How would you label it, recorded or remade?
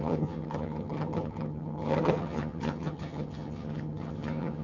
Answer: remade